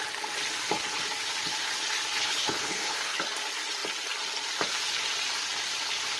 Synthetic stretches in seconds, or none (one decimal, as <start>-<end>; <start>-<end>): 2.2-3.2